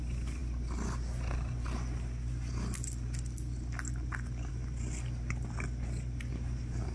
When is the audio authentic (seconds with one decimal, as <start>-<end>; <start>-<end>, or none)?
0.0-6.9